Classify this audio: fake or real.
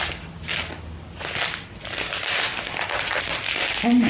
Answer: real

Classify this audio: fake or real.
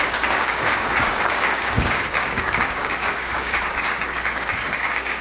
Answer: fake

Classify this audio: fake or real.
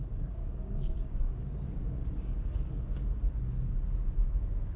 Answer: fake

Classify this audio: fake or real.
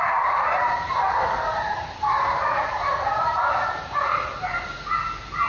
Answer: real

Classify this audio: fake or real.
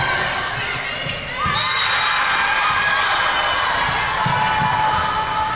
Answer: real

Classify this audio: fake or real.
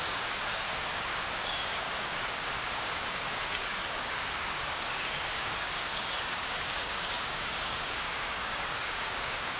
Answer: fake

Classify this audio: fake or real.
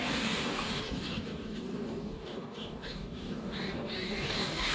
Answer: fake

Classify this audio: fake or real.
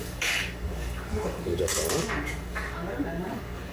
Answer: fake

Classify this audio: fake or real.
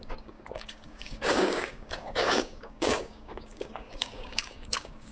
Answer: fake